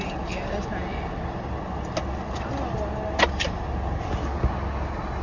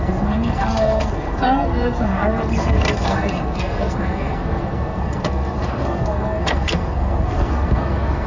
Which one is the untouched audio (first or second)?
first